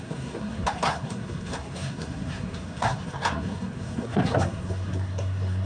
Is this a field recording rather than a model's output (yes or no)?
no